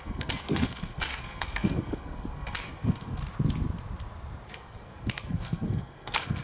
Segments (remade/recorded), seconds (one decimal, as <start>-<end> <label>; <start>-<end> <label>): 0.0-3.2 remade; 3.2-4.5 recorded; 4.5-6.4 remade